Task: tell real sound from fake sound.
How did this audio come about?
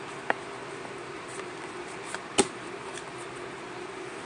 real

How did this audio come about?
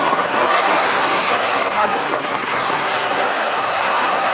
fake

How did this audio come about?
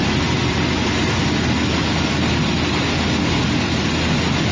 real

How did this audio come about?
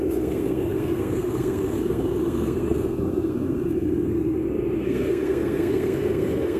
fake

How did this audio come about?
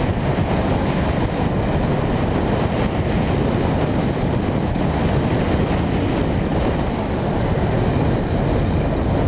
real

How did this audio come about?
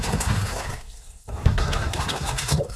fake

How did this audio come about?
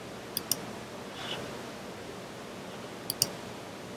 real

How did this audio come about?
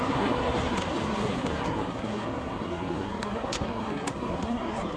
fake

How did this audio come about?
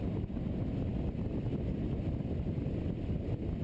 real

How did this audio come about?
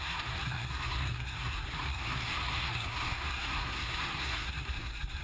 fake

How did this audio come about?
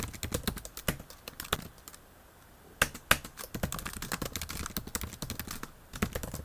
real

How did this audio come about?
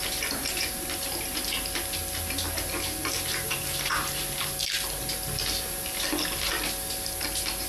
real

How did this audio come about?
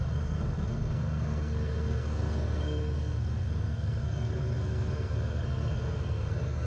fake